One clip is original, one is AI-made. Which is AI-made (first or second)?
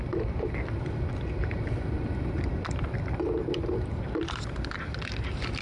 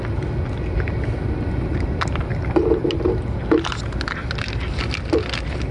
first